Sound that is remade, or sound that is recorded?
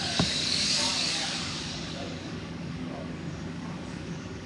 remade